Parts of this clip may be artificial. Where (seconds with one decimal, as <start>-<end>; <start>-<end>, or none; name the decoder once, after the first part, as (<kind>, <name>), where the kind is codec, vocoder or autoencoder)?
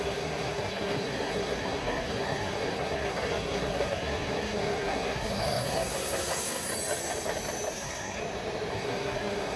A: 0.0-6.7 (codec, SNAC); 7.7-8.2; 8.7-9.6